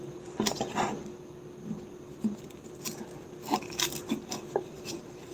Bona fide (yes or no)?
yes